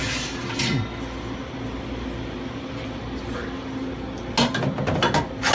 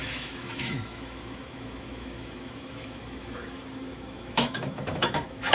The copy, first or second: second